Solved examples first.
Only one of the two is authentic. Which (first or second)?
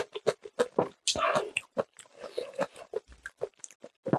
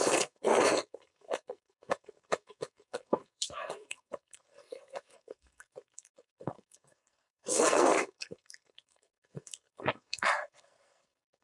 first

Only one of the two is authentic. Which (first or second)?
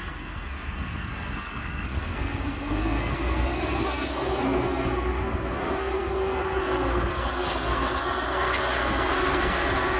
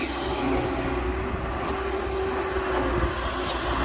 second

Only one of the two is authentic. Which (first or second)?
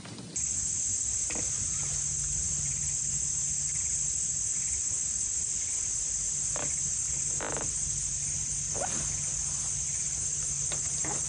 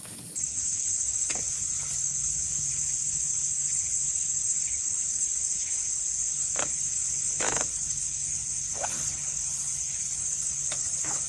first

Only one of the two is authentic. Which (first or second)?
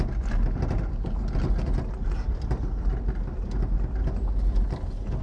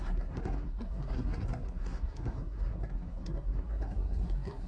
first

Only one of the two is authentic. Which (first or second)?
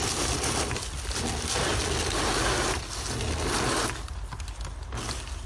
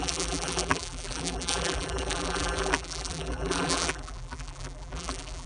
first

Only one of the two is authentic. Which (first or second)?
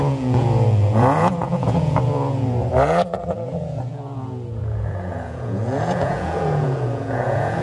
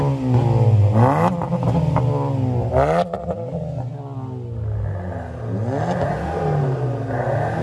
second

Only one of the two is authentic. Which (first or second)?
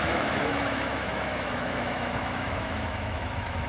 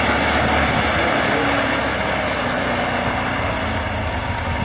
second